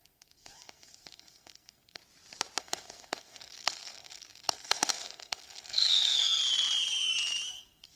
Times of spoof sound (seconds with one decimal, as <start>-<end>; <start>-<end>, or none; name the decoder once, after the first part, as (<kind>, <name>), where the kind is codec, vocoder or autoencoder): 0.0-2.0 (codec, SNAC); 2.6-6.4; 7.5-8.0